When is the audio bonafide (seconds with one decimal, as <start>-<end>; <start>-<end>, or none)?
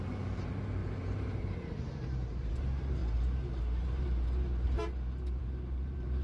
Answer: 3.0-5.4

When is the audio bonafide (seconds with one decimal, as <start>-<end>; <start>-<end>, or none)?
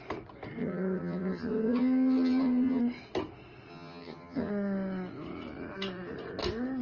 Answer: 0.0-0.6; 2.8-3.7; 4.5-6.8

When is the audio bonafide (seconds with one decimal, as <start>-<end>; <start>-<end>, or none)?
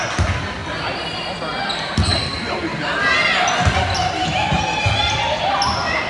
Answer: 0.0-6.1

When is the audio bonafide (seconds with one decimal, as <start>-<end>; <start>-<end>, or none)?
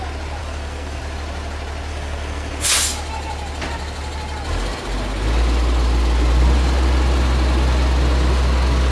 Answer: 0.0-0.4; 1.0-1.9; 2.7-8.9